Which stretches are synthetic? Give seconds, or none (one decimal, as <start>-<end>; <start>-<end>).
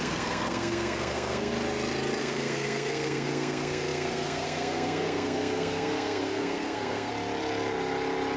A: 0.0-1.5; 2.2-7.1